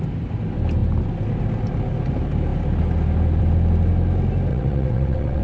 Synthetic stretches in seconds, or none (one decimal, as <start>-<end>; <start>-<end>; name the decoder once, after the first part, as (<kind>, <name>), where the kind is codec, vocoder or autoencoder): 4.5-5.4 (vocoder, WaveNeXt)